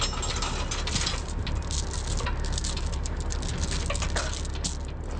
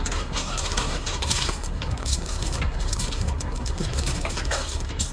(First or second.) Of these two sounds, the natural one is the first